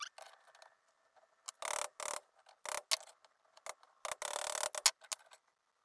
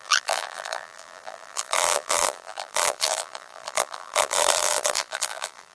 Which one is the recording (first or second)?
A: first